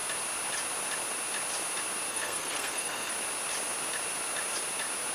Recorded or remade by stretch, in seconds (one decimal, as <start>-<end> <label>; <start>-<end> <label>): 0.0-2.1 recorded; 2.1-3.1 remade; 3.1-5.1 recorded